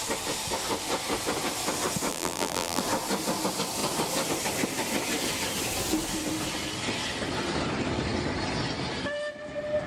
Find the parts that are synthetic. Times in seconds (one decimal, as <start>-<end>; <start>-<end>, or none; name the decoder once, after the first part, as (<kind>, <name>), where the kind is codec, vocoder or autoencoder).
2.1-2.8 (vocoder, BigVGAN v2)